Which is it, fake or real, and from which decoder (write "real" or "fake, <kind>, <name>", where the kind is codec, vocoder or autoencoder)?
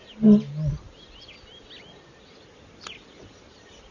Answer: real